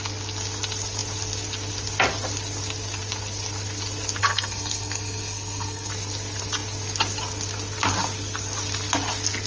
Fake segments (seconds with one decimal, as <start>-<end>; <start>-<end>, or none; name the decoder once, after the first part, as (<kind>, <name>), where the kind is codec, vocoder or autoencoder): 4.2-5.9 (codec, SNAC)